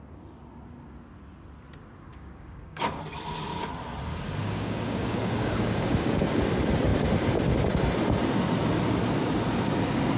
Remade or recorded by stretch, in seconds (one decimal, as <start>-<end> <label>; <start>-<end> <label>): 0.0-2.1 recorded; 2.1-3.0 remade; 3.0-4.4 recorded; 4.4-6.5 remade; 6.5-10.2 recorded